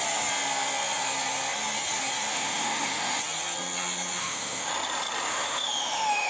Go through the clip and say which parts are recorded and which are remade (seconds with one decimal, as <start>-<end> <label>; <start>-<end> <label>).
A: 0.0-2.3 recorded; 2.3-3.2 remade; 3.2-4.2 recorded; 4.2-4.7 remade; 4.7-5.3 recorded; 5.3-6.3 remade